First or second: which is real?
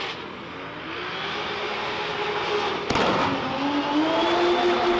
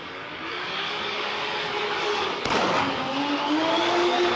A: first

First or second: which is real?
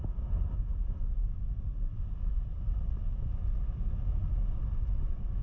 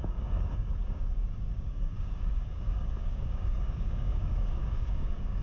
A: first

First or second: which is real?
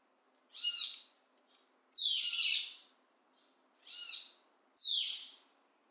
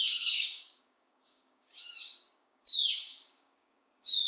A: first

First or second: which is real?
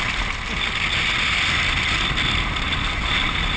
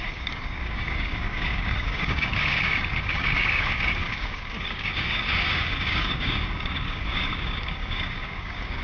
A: first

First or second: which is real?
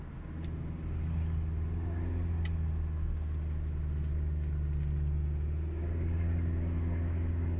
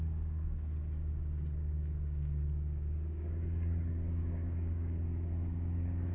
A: first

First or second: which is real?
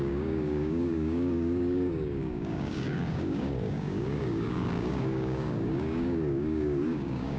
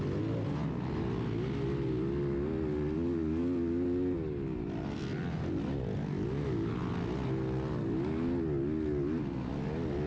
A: second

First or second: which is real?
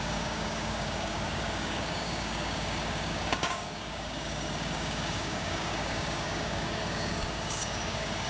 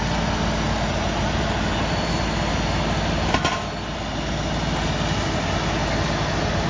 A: second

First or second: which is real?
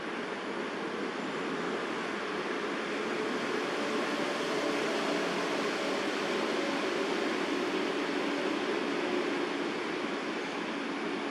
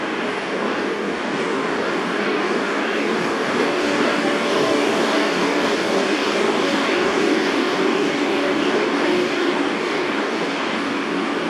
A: first